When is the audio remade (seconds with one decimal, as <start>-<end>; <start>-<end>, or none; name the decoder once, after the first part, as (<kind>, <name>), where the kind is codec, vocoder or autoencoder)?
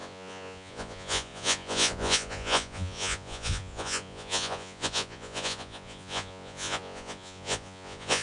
0.0-8.2 (vocoder, Vocos)